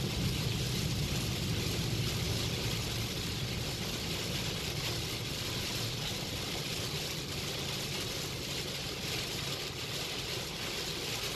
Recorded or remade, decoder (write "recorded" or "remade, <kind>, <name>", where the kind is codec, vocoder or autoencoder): recorded